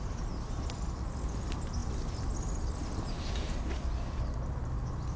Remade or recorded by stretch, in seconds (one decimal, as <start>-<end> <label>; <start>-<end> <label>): 0.0-5.2 recorded